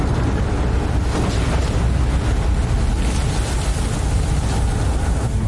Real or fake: real